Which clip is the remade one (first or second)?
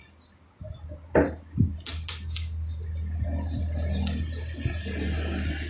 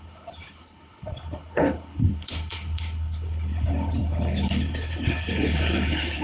second